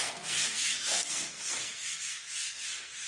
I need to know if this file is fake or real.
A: fake